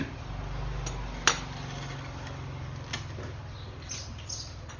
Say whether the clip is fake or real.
real